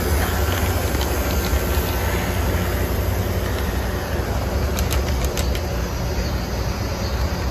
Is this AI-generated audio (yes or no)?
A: no